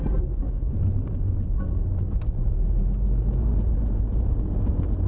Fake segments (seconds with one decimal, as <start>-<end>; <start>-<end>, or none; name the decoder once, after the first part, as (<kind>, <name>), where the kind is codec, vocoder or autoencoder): none